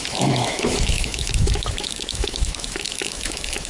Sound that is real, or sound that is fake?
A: fake